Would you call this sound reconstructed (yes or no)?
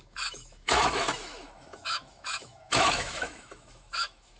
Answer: yes